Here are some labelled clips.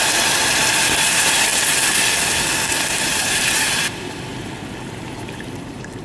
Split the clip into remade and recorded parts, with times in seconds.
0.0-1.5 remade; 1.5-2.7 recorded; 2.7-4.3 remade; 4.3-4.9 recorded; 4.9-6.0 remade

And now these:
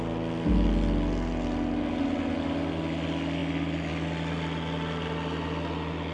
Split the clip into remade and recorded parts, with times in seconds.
0.0-6.1 recorded

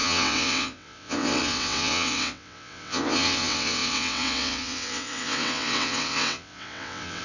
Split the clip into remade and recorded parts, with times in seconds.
0.0-7.2 remade

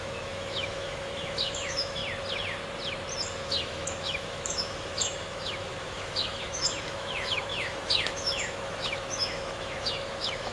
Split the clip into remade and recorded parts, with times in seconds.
0.0-2.0 remade; 2.0-3.4 recorded; 3.4-10.5 remade